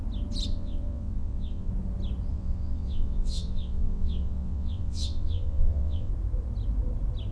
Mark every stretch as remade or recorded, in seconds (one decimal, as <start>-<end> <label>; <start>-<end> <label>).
0.0-0.5 recorded; 0.5-1.7 remade; 1.7-2.3 recorded; 2.3-6.1 remade; 6.1-7.3 recorded